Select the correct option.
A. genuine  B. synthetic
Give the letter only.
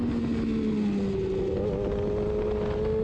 A